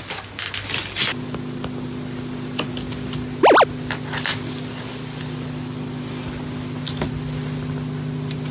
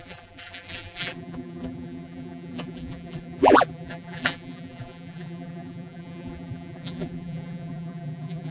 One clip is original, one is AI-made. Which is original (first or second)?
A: first